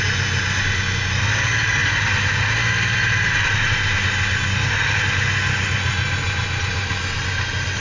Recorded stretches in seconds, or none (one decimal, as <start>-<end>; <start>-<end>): 0.0-7.8